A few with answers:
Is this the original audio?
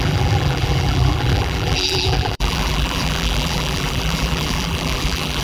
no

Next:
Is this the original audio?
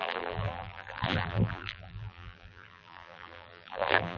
no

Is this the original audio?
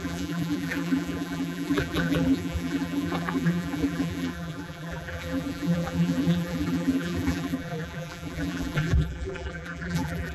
no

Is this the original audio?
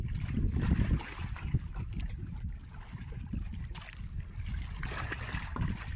yes